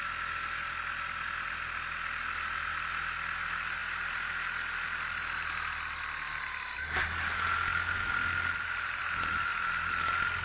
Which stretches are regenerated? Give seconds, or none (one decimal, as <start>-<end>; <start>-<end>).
none